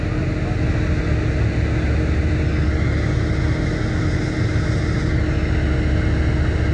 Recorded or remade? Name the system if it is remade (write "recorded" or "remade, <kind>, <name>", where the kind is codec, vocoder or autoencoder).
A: recorded